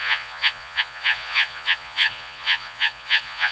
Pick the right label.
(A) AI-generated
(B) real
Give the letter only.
A